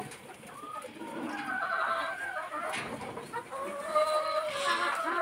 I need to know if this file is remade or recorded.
recorded